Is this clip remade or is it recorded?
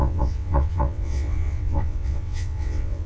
remade